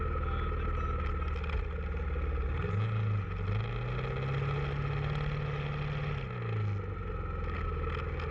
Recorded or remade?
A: recorded